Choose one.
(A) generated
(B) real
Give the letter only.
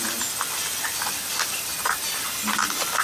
B